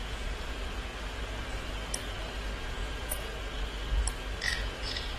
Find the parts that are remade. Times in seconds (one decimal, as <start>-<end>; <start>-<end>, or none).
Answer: 0.0-0.9; 2.6-3.3; 4.5-5.2